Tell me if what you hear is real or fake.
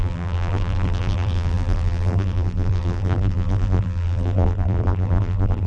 fake